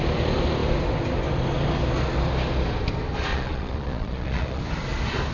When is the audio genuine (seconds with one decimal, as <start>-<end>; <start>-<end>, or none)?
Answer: 0.0-3.3; 4.6-5.3